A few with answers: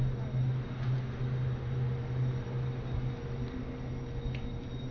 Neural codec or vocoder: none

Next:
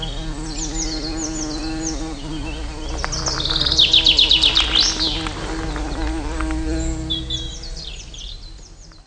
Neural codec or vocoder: none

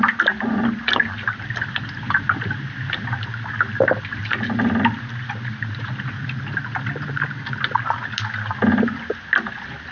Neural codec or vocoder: none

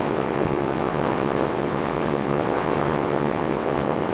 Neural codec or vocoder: vocoder, WaveNeXt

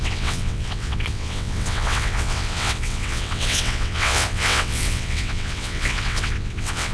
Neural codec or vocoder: vocoder, WaveNeXt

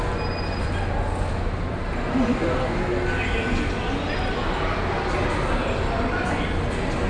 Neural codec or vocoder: none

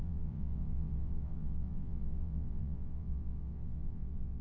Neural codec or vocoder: vocoder, WaveNeXt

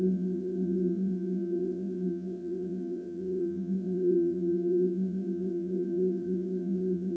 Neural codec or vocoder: vocoder, WaveNeXt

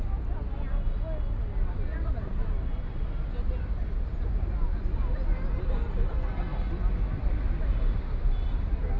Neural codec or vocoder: none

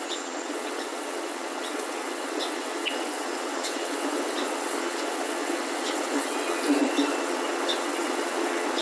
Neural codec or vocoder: vocoder, WaveNeXt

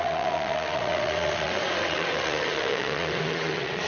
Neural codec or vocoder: vocoder, WaveNeXt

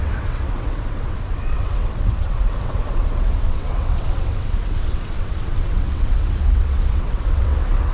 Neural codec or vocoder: vocoder, WaveNeXt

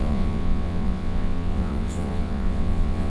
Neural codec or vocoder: vocoder, WaveNeXt